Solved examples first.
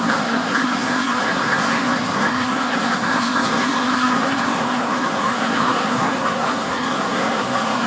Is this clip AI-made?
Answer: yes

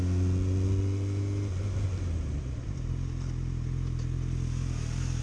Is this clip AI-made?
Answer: no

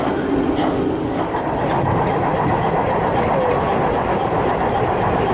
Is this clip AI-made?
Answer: no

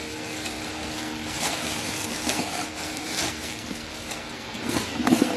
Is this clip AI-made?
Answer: yes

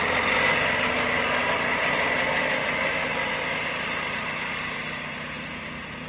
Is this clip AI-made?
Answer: no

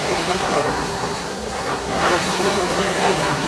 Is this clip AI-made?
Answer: yes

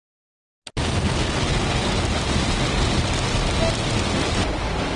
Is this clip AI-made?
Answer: no